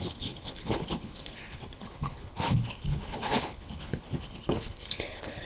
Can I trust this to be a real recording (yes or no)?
no